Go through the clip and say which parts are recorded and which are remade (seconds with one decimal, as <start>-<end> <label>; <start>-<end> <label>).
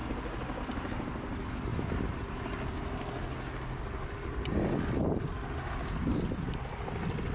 0.0-7.3 recorded